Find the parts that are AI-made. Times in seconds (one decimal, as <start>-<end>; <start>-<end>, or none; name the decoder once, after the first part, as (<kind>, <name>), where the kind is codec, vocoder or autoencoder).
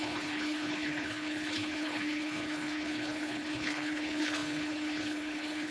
0.0-5.7 (codec, HILCodec)